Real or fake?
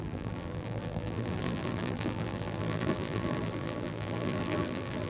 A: fake